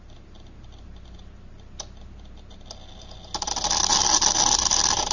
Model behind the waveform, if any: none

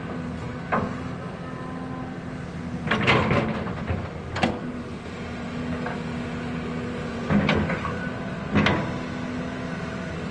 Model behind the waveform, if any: none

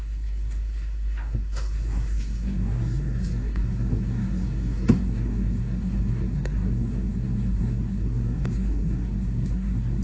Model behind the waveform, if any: codec, SNAC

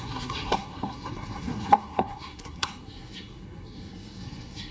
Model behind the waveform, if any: codec, SNAC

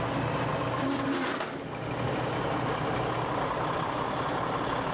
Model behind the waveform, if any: none